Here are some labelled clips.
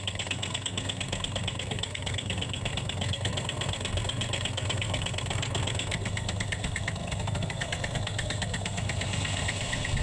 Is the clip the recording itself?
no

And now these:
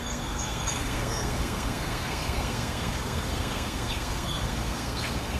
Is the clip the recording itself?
no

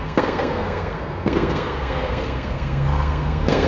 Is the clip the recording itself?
no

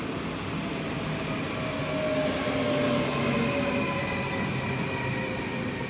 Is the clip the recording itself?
yes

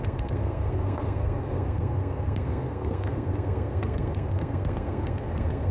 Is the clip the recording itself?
no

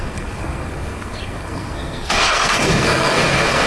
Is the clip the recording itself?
no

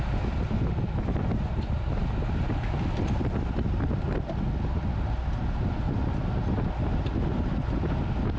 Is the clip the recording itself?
yes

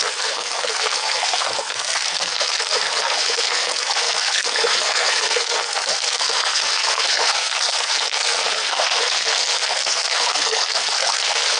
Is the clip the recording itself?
no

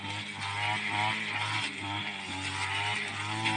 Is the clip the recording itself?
yes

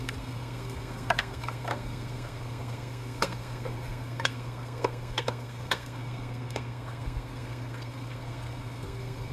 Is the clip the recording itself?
no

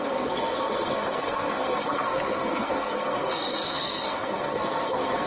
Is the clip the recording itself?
no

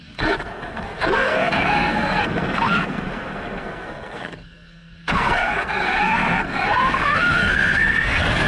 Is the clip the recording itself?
no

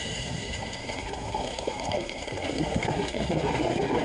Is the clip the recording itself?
no